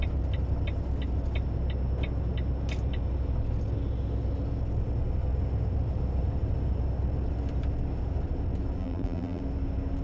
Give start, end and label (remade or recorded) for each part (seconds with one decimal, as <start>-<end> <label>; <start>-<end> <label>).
0.0-8.8 recorded; 8.8-9.4 remade; 9.4-10.0 recorded